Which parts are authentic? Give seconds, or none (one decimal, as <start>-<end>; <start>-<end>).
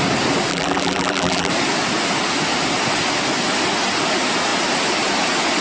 0.0-0.5; 1.5-5.6